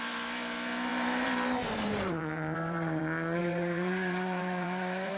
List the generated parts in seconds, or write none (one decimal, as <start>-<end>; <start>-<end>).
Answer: 0.9-3.0; 3.4-5.2